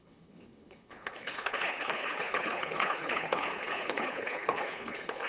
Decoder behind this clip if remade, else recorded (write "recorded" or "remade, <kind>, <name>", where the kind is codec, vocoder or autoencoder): remade, codec, HILCodec